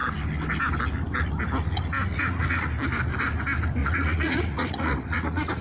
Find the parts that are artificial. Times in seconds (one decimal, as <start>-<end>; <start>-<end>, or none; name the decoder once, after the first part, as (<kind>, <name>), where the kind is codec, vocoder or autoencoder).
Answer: 2.1-2.7 (vocoder, Vocos); 3.8-5.6